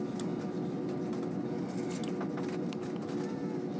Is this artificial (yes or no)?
no